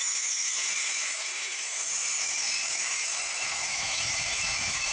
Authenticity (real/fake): fake